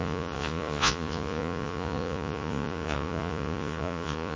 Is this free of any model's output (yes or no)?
no